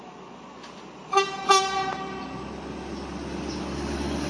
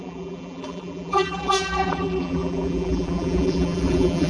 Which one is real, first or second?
first